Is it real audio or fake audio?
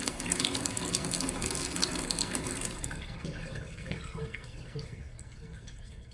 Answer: fake